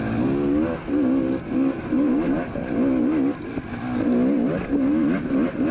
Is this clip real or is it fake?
real